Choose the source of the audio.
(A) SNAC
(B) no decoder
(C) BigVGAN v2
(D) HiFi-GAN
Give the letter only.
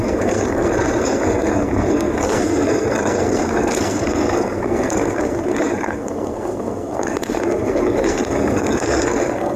A